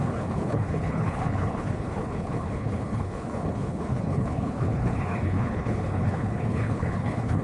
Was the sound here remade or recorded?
remade